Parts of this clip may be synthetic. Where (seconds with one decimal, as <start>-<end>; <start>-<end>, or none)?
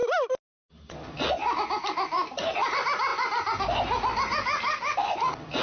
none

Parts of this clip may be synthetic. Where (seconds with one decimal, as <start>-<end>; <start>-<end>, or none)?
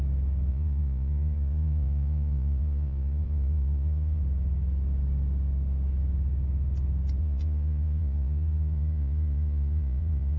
0.5-4.2; 7.2-10.4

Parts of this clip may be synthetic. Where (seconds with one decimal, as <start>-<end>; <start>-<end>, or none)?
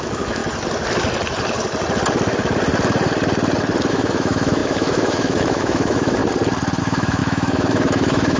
0.0-0.4; 3.9-6.2; 6.8-8.4